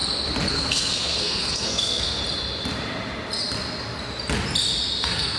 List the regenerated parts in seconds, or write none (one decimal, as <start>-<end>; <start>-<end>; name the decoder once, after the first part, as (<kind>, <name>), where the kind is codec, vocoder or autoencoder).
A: 0.5-2.2 (codec, SNAC); 5.0-5.4